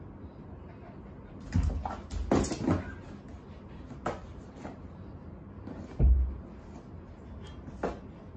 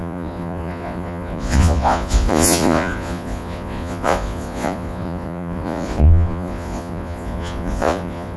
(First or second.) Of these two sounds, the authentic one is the first